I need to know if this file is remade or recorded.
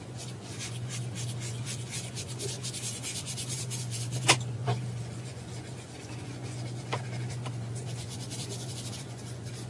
remade